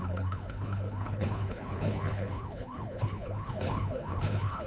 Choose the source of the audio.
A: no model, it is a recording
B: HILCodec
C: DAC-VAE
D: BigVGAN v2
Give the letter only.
B